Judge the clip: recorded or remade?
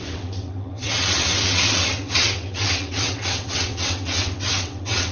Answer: remade